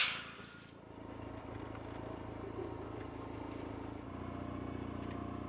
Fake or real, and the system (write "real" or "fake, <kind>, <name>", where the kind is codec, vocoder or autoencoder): real